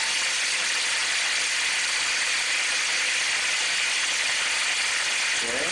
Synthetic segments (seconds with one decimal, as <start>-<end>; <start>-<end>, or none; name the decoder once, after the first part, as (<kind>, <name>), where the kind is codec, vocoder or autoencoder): none